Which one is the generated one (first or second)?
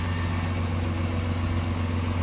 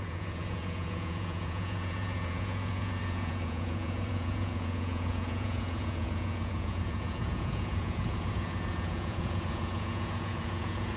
second